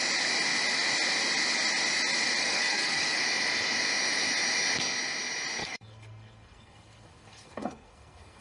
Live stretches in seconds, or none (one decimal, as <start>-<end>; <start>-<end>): 0.0-2.4; 3.2-5.6